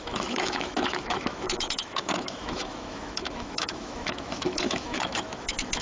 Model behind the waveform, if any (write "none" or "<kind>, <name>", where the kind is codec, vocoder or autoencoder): autoencoder, DAC-VAE